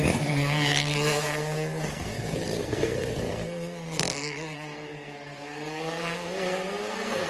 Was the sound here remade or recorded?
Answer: remade